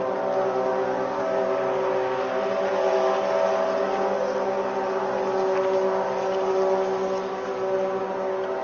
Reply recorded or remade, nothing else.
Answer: recorded